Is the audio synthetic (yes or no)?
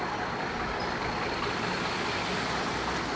no